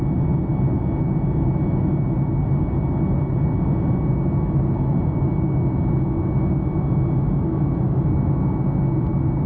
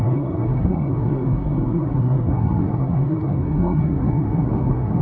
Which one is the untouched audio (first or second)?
first